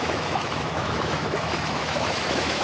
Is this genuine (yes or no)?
no